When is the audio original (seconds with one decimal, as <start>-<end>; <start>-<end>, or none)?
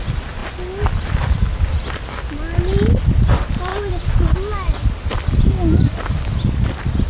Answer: 0.0-7.1